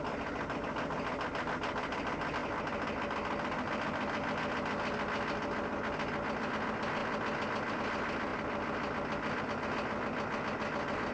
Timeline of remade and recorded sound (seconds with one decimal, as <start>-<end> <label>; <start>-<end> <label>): 0.0-11.1 recorded

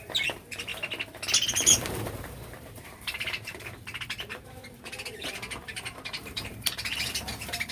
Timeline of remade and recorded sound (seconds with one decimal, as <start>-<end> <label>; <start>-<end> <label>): 0.0-0.7 remade; 0.7-1.5 recorded; 1.5-7.7 remade

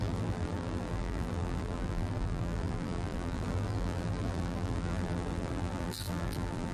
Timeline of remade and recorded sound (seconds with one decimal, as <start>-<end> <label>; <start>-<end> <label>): 0.0-6.7 remade

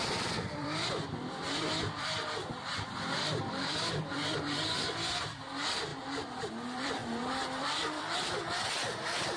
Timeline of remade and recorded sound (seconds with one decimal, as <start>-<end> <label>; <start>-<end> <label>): 0.0-7.0 remade; 7.0-7.6 recorded; 7.6-9.4 remade

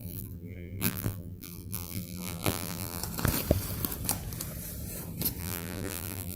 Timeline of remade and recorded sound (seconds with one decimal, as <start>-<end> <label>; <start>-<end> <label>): 0.0-3.0 remade; 3.0-5.4 recorded; 5.4-6.4 remade

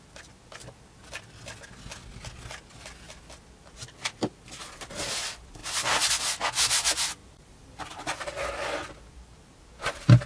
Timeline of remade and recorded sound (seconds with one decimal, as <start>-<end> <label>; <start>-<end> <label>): 0.0-5.6 recorded; 5.6-6.1 remade; 6.1-7.2 recorded; 7.2-8.9 remade; 8.9-10.3 recorded

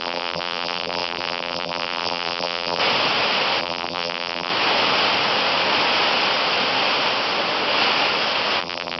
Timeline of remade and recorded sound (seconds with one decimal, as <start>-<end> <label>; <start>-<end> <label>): 0.0-2.8 remade; 2.8-3.6 recorded; 3.6-4.5 remade; 4.5-8.6 recorded; 8.6-9.0 remade

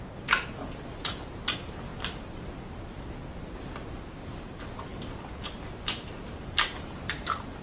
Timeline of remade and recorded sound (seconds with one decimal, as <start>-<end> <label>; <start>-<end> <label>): 0.0-1.9 remade; 1.9-4.2 recorded; 4.2-4.9 remade; 4.9-5.7 recorded; 5.7-7.6 remade